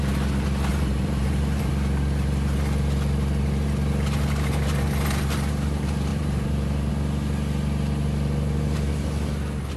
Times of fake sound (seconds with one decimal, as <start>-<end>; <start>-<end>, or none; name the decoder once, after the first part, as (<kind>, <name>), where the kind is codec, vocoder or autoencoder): 0.7-1.7 (vocoder, BigVGAN v2); 6.1-6.9